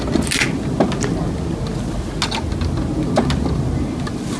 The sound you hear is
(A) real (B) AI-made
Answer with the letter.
A